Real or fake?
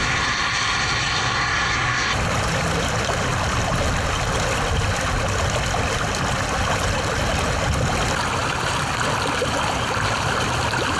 real